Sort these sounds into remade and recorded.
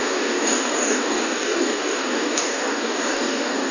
remade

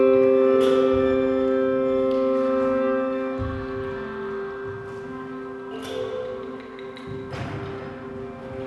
recorded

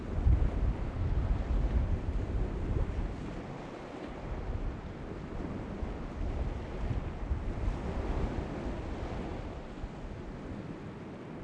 recorded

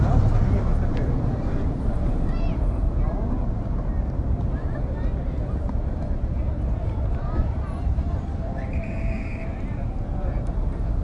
remade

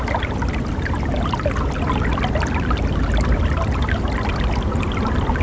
recorded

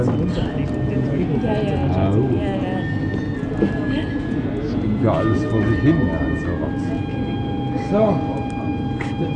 recorded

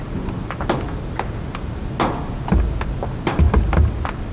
recorded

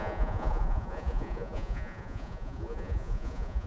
remade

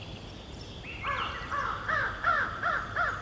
recorded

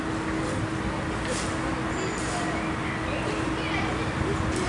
recorded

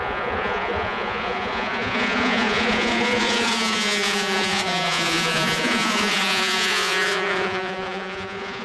remade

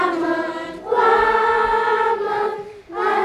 recorded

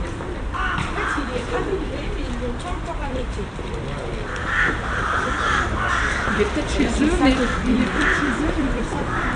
remade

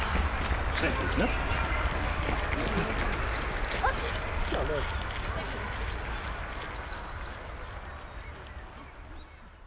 recorded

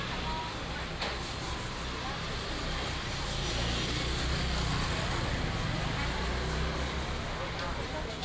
recorded